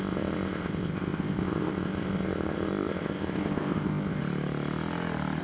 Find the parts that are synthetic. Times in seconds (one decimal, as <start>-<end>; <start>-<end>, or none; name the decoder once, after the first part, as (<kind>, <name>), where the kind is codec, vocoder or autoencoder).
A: 0.0-4.2 (codec, ZipCodec)